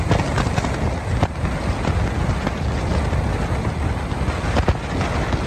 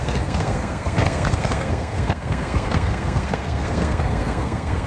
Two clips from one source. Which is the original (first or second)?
first